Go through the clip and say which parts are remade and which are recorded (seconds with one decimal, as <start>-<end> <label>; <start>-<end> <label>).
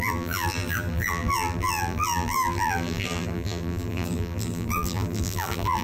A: 0.0-5.8 remade